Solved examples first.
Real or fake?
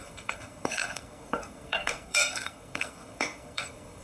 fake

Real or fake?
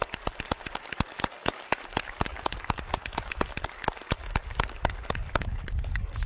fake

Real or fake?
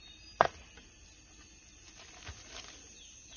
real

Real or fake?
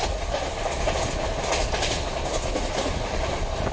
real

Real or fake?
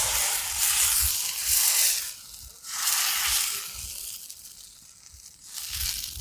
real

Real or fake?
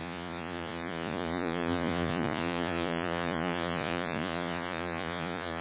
fake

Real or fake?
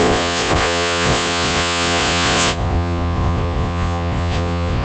fake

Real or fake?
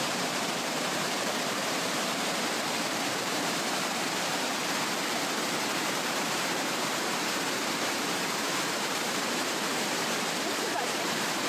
fake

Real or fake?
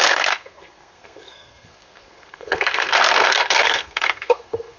fake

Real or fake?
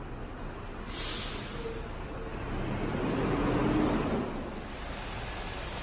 real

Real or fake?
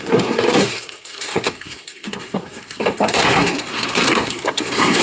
fake